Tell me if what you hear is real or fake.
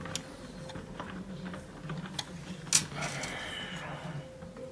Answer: real